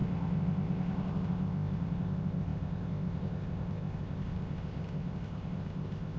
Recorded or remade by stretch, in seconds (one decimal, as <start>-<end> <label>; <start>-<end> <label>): 0.0-6.2 remade